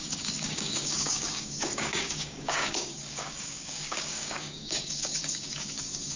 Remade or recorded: remade